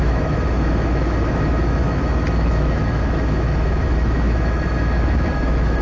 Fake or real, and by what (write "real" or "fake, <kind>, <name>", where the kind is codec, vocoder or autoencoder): fake, autoencoder, DAC-VAE